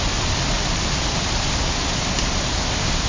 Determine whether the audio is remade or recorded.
recorded